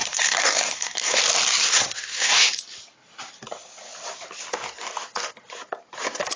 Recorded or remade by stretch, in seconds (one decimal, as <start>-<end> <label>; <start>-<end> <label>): 0.0-1.2 remade; 1.2-1.6 recorded; 1.6-2.6 remade; 2.6-6.4 recorded